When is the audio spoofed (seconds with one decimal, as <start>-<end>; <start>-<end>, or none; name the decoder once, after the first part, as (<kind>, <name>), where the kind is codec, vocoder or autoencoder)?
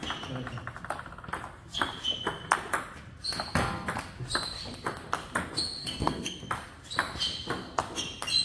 5.8-6.4 (codec, SNAC)